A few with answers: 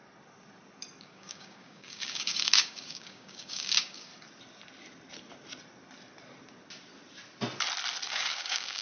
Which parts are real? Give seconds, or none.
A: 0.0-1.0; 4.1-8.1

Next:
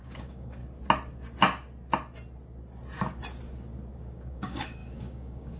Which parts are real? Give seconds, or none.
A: 0.6-4.0

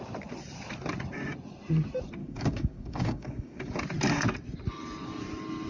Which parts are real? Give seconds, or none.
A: 0.0-2.2; 3.6-5.7

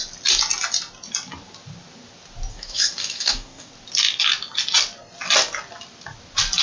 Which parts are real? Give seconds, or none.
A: 0.0-2.5; 3.7-6.6

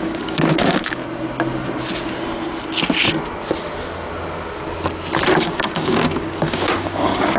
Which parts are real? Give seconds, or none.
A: 1.0-5.4

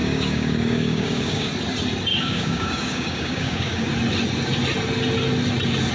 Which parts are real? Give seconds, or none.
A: 1.5-2.1; 3.9-5.9

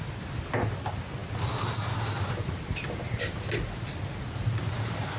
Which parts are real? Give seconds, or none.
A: 0.0-5.2